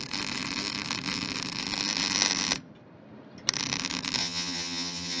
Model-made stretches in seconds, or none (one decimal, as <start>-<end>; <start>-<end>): 4.2-5.2